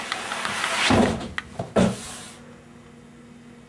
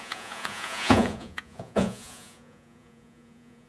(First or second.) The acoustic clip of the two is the first